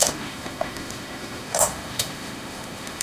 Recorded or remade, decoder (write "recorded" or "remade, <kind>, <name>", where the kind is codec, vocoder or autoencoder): remade, autoencoder, DAC-VAE